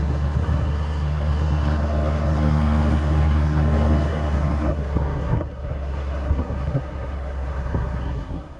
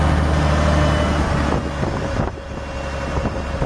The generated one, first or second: first